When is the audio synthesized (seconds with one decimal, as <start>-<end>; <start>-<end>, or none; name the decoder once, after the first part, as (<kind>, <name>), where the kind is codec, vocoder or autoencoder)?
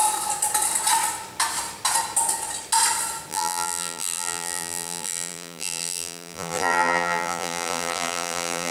3.3-8.7 (vocoder, BigVGAN v2)